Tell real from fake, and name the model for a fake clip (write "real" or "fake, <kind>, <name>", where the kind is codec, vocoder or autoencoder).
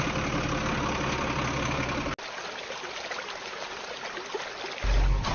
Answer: real